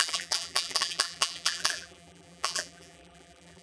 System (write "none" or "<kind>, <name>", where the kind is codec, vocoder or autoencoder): vocoder, BigVGAN v2